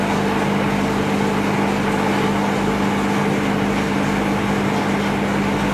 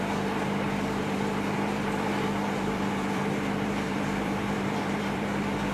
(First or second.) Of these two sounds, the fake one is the second